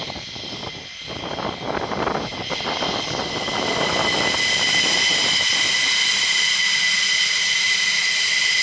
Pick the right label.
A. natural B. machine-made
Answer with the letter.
A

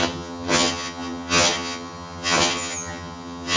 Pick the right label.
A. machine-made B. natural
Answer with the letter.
A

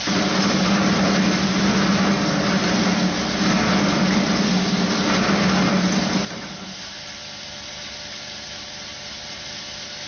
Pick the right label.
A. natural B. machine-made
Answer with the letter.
A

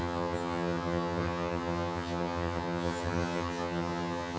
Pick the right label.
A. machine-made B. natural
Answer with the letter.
A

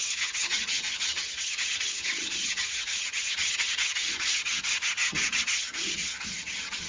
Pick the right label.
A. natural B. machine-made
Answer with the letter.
B